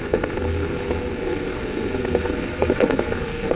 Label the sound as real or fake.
fake